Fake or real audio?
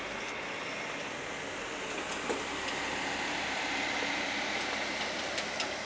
real